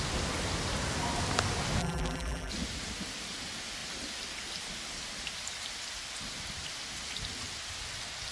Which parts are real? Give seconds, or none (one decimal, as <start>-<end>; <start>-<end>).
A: 0.0-1.8; 2.5-8.3